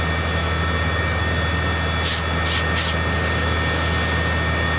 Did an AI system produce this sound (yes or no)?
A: no